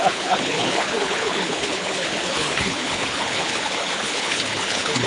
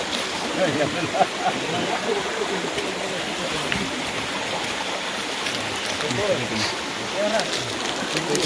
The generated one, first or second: first